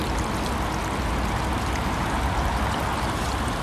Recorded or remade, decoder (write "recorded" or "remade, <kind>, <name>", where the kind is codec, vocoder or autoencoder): recorded